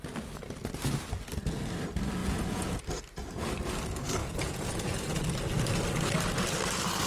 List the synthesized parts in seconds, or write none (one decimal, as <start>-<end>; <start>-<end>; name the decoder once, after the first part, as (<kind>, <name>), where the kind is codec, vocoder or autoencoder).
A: 2.2-2.8 (vocoder, Vocos); 4.2-5.2